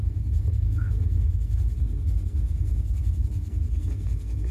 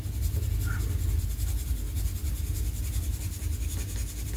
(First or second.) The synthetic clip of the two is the first